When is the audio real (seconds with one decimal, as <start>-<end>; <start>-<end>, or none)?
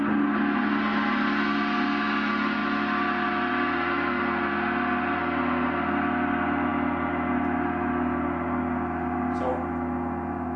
0.0-10.6